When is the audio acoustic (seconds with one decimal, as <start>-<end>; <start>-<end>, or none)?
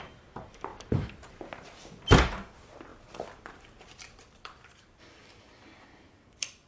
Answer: 0.0-0.7; 1.3-2.9; 5.4-6.7